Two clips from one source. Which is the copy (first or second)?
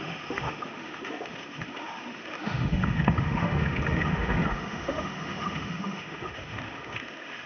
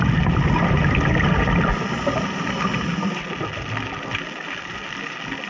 first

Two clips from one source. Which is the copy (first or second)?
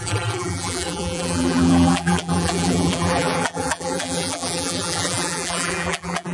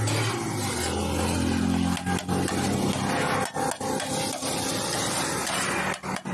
first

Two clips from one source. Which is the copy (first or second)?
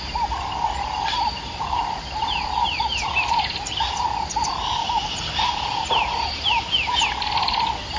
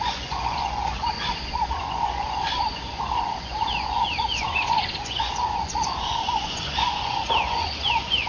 second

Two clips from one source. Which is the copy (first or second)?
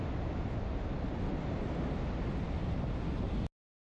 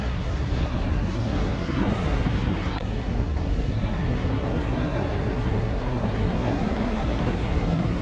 second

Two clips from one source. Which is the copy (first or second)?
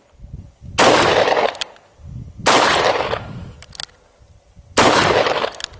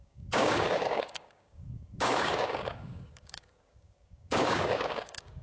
second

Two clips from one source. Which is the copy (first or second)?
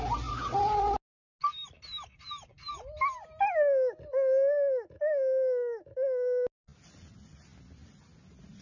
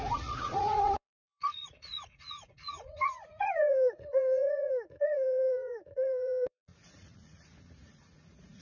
second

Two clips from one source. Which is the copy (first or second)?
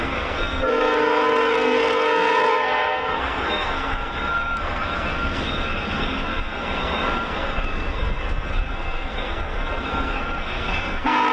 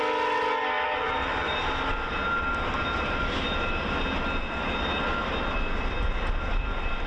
first